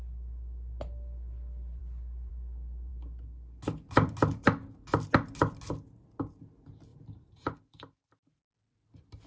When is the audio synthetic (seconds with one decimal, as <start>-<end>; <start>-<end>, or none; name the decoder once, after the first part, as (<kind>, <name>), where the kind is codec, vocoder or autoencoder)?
6.9-8.4 (vocoder, BigVGAN v2)